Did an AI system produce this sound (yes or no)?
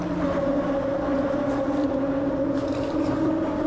no